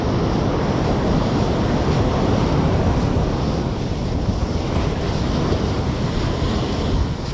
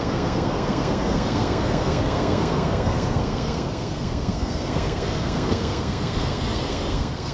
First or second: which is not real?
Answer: second